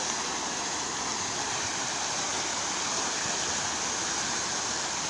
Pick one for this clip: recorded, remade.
recorded